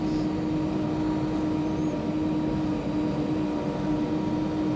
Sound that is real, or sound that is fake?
real